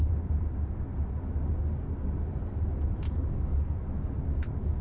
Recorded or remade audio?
recorded